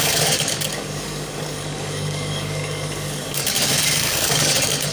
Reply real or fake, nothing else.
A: fake